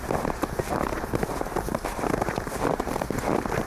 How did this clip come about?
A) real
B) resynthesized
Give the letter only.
B